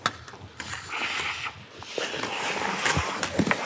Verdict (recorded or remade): recorded